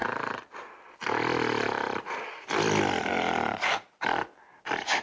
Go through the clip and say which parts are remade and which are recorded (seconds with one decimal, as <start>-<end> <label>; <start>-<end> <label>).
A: 0.0-3.0 recorded; 3.0-5.0 remade